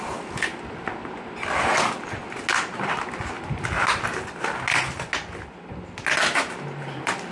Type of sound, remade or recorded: recorded